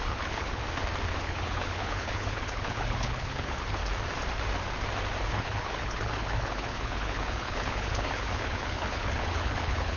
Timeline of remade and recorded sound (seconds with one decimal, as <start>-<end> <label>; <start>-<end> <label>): 0.0-0.6 remade; 0.6-1.2 recorded; 1.2-3.8 remade; 3.8-5.3 recorded; 5.3-10.0 remade